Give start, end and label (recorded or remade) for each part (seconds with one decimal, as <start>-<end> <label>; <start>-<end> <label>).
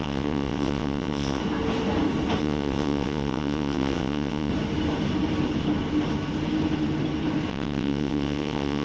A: 0.0-1.4 remade; 1.4-2.4 recorded; 2.4-4.5 remade; 4.5-7.5 recorded; 7.5-8.8 remade